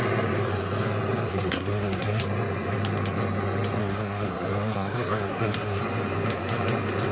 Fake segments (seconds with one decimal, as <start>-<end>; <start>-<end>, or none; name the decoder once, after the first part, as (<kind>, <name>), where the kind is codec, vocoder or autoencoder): 1.3-2.2 (codec, SNAC); 3.8-5.8